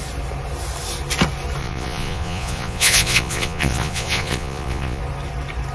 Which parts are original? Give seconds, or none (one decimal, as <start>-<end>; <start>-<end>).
0.0-1.6; 5.0-5.7